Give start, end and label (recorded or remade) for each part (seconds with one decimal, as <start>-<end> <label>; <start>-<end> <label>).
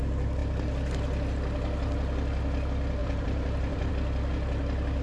0.0-3.0 recorded; 3.0-3.9 remade; 3.9-5.0 recorded